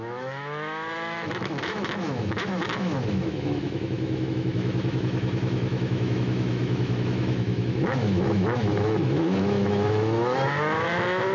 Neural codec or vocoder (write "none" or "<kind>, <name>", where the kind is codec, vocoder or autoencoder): autoencoder, DAC-VAE